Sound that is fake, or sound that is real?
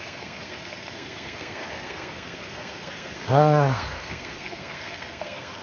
fake